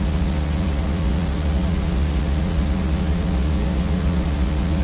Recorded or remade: remade